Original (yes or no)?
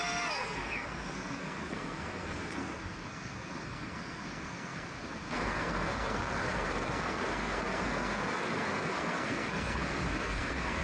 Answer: no